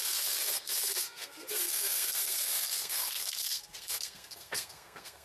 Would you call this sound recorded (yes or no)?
no